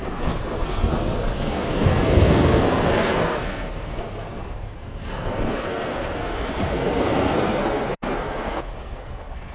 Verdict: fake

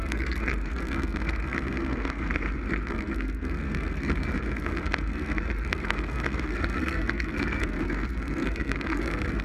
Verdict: fake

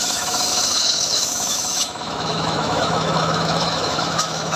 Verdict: fake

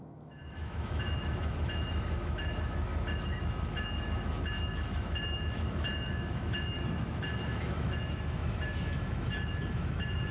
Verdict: fake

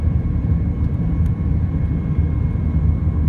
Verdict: fake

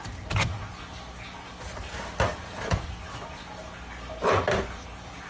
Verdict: real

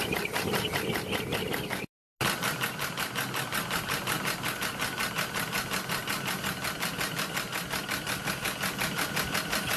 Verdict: real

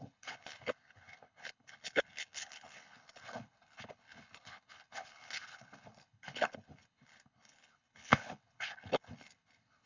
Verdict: fake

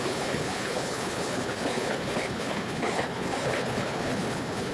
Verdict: fake